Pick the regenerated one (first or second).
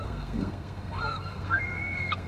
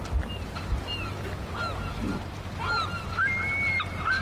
first